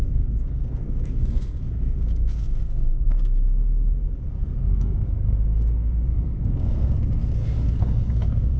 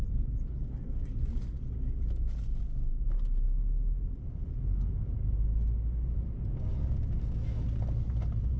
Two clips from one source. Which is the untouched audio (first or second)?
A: second